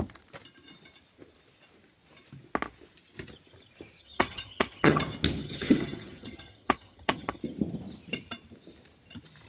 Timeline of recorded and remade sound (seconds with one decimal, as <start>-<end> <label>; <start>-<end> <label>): 0.0-4.0 recorded; 4.0-5.0 remade; 5.0-5.4 recorded; 5.4-7.4 remade; 7.4-9.5 recorded